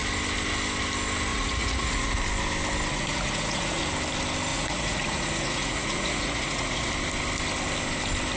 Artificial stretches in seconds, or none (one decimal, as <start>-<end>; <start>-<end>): 1.3-2.2; 2.9-3.8; 4.5-6.9